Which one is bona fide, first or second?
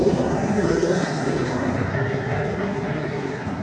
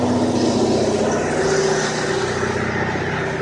second